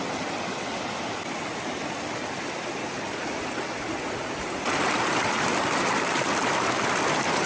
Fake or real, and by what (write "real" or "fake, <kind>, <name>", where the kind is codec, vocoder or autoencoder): real